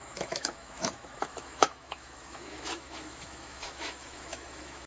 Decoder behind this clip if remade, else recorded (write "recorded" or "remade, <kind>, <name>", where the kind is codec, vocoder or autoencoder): remade, autoencoder, DAC-VAE